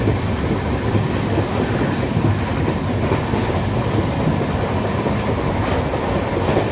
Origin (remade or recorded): recorded